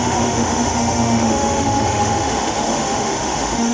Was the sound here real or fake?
fake